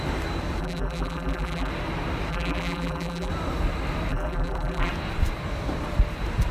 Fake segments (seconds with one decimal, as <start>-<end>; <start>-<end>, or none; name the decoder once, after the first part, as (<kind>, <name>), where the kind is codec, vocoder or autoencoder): 0.6-1.7 (vocoder, BigVGAN v2); 2.3-3.3; 4.1-4.9